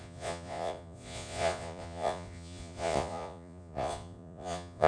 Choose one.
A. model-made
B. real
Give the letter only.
A